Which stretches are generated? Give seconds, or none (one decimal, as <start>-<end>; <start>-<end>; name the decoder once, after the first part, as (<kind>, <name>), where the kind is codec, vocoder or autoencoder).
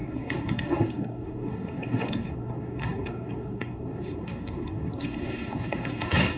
0.0-6.4 (codec, SNAC)